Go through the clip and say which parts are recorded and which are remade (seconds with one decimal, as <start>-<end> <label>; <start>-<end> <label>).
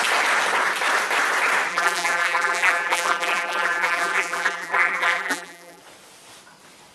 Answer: 0.0-1.7 recorded; 1.7-5.8 remade; 5.8-6.9 recorded